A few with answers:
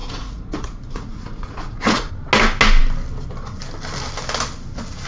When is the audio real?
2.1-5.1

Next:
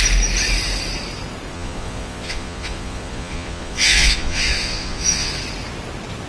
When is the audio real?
0.0-1.5; 5.3-6.3

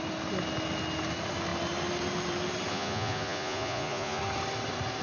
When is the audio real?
0.0-2.7; 4.2-5.0

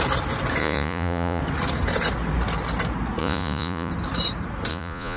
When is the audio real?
0.0-0.6; 1.4-3.2; 3.9-4.7

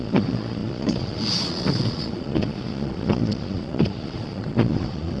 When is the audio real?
none

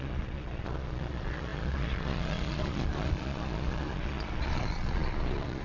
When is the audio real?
none

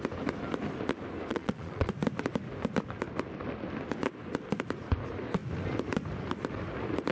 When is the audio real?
0.0-1.3; 1.9-7.1

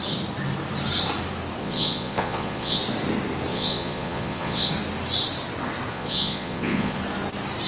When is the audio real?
0.0-1.6; 2.8-3.5; 4.7-5.9; 7.0-7.7